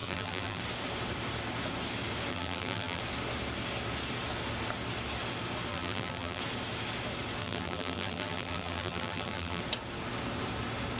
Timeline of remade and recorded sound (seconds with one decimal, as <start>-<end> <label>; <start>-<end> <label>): 0.0-0.6 remade; 0.6-2.3 recorded; 2.3-3.0 remade; 3.0-5.7 recorded; 5.7-6.4 remade; 6.4-7.4 recorded; 7.4-9.6 remade; 9.6-11.0 recorded